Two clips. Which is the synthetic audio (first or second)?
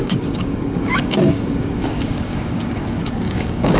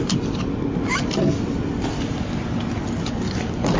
first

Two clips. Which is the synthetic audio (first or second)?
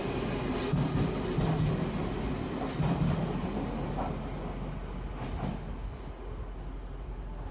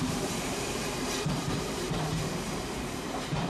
second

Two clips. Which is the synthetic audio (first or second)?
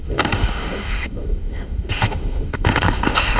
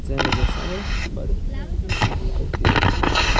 first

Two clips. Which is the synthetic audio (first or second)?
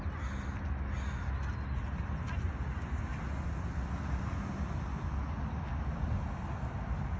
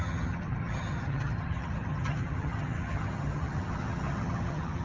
second